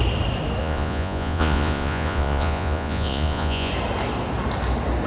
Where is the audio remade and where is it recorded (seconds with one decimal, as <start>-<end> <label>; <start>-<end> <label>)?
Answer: 0.0-0.6 recorded; 0.6-3.7 remade; 3.7-5.1 recorded